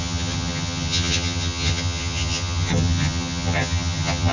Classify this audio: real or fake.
fake